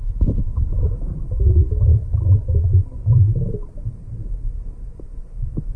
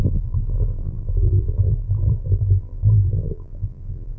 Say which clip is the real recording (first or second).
first